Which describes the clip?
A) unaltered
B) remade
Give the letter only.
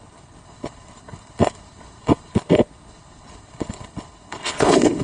B